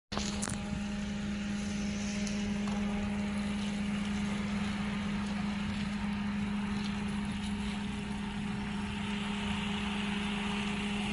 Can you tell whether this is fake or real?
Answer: real